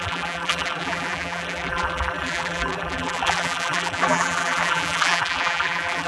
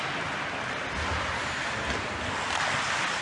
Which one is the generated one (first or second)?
first